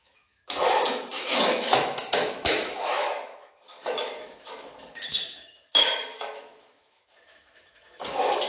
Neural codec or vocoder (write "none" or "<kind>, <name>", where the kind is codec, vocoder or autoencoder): autoencoder, DAC-VAE